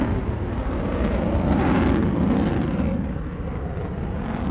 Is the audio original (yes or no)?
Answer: yes